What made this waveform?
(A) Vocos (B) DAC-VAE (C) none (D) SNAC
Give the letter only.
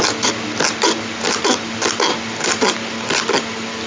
C